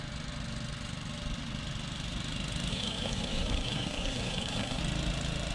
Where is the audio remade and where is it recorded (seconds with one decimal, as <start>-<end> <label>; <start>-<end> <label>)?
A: 0.0-2.7 recorded; 2.7-4.8 remade; 4.8-5.5 recorded

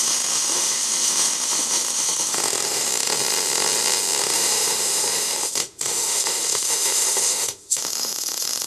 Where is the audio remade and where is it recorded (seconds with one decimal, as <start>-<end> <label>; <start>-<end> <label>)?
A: 0.0-2.9 remade; 2.9-4.2 recorded; 4.2-8.7 remade

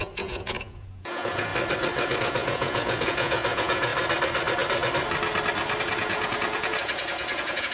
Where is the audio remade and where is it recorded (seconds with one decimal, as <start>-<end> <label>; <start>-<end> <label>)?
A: 0.0-1.5 remade; 1.5-2.2 recorded; 2.2-3.9 remade; 3.9-5.8 recorded; 5.8-7.7 remade